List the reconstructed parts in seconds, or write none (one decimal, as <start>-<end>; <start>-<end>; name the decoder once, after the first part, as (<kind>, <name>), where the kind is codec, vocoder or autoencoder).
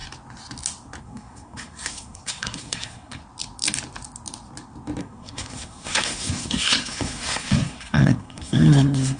1.0-3.2 (codec, SNAC); 5.0-9.2